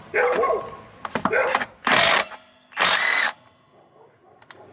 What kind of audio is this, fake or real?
real